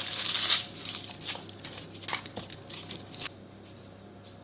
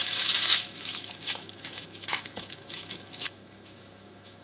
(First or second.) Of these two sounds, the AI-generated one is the second